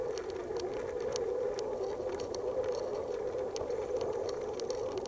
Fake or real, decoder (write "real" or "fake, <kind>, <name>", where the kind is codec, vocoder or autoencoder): real